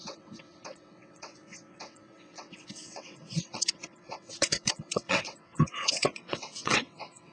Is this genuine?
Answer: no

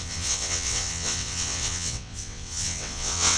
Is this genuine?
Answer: no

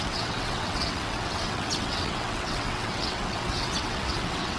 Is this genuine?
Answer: no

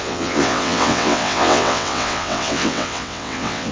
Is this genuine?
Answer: no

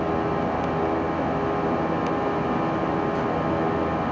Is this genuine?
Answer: yes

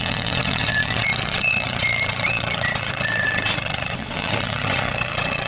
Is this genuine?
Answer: no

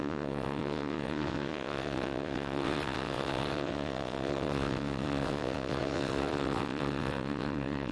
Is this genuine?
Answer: no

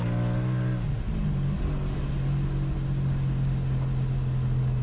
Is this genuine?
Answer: yes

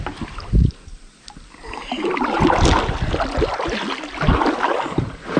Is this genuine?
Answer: yes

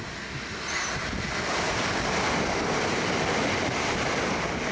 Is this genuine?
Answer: yes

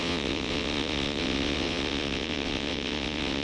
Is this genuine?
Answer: no